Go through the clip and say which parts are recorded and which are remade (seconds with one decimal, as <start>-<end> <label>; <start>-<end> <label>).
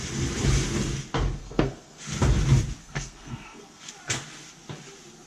0.0-1.4 recorded; 1.4-2.0 remade; 2.0-2.8 recorded; 2.8-3.9 remade; 3.9-5.3 recorded